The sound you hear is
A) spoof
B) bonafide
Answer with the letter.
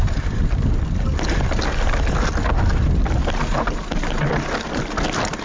B